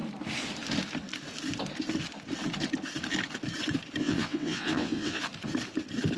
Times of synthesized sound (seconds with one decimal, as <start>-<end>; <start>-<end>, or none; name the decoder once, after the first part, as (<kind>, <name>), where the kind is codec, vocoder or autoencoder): 4.0-5.2 (vocoder, WaveNeXt)